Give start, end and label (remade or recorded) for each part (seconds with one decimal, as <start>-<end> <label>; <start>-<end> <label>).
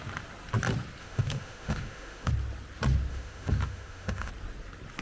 0.0-1.0 recorded; 1.0-2.3 remade; 2.3-3.1 recorded; 3.1-4.3 remade; 4.3-5.0 recorded